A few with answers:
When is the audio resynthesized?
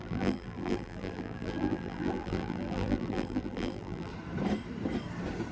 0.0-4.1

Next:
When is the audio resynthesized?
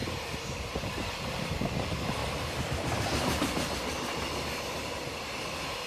none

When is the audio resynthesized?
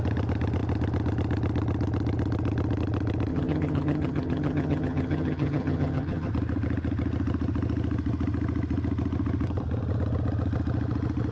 3.3-6.3